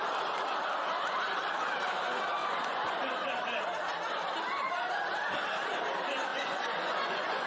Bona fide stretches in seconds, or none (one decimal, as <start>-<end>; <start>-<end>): 0.0-2.4; 3.0-6.3